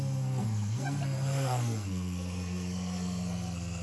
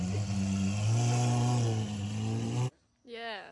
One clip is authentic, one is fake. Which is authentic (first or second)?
second